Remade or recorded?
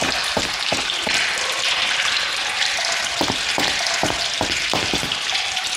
recorded